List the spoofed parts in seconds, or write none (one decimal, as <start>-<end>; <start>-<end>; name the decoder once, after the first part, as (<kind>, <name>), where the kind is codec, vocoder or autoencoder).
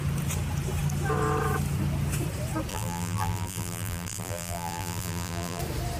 2.7-5.6 (vocoder, BigVGAN v2)